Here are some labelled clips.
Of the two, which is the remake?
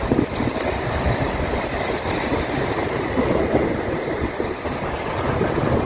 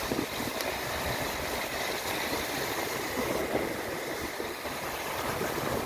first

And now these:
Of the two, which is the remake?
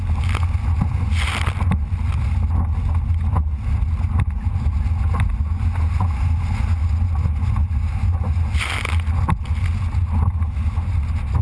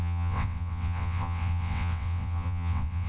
second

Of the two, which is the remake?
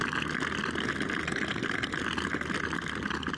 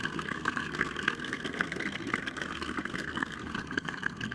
second